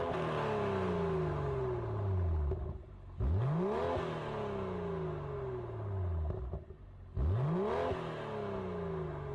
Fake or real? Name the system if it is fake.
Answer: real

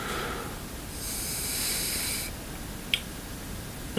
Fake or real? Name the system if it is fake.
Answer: real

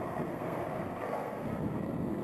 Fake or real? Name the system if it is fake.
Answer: fake, codec, SNAC